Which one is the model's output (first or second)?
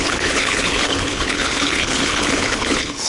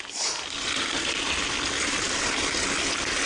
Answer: first